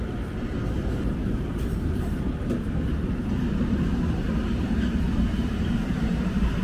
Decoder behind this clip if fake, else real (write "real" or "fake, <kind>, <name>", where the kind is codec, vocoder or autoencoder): fake, vocoder, BigVGAN v2